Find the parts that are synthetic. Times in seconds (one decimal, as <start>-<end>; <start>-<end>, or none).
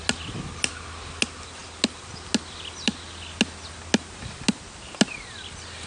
none